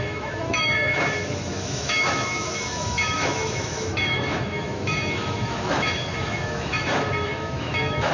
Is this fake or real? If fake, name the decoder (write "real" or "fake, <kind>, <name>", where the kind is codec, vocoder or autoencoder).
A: fake, autoencoder, DAC-VAE